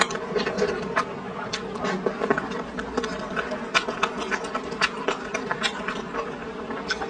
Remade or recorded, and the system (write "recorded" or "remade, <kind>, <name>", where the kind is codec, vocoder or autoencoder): recorded